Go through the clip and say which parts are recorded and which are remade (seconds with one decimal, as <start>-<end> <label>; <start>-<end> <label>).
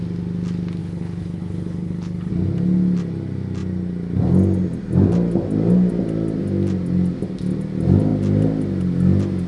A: 0.0-0.8 recorded; 0.8-2.3 remade; 2.3-9.5 recorded